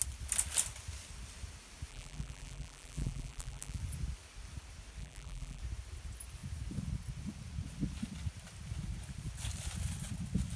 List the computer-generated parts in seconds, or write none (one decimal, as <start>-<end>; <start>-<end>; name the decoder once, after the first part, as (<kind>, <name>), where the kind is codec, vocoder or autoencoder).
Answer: 1.9-3.8 (vocoder, BigVGAN v2); 5.0-5.6